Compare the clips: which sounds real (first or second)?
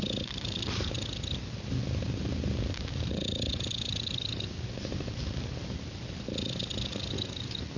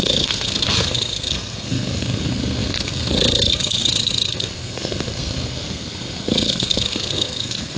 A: first